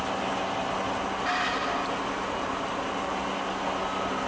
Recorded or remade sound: recorded